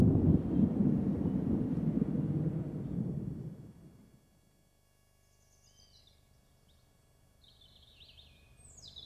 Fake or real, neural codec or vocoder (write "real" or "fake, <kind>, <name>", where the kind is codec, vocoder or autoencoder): real